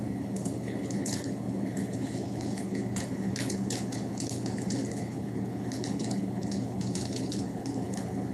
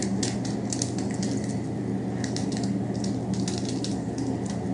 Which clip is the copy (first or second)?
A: first